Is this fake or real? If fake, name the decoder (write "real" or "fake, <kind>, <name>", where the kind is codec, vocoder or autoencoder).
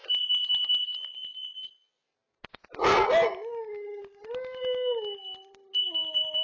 real